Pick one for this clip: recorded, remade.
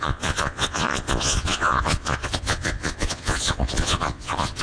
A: remade